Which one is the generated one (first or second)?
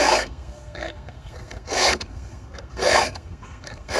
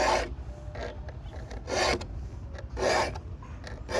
first